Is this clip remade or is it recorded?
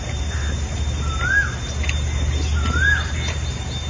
recorded